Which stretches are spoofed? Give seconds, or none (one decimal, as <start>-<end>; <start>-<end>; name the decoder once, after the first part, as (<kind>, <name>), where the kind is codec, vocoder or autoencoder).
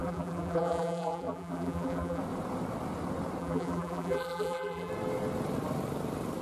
0.0-2.2 (vocoder, BigVGAN v2); 3.4-4.9